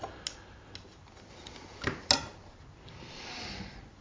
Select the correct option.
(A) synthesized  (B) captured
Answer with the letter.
B